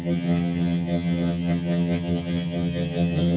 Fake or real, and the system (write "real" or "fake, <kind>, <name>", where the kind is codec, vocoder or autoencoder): fake, vocoder, HiFi-GAN